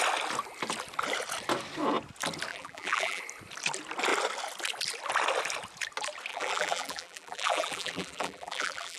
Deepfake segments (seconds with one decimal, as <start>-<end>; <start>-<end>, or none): 2.5-3.2; 6.3-9.0